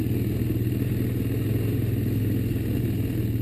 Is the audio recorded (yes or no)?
yes